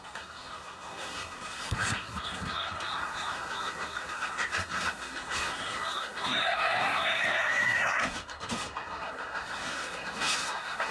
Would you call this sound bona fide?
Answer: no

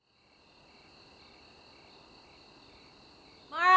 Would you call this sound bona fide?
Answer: yes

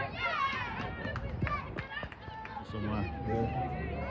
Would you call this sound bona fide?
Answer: yes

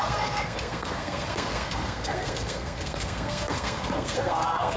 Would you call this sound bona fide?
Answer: no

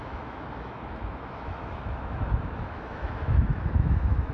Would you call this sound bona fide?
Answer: no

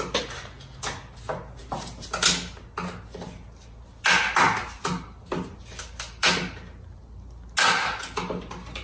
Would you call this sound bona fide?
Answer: yes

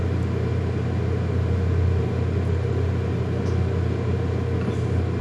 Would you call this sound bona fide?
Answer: yes